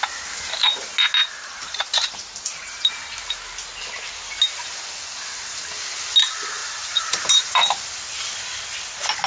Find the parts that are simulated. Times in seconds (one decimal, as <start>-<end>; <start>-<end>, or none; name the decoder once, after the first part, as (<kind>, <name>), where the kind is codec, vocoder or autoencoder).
1.2-2.9 (vocoder, BigVGAN v2); 6.6-7.5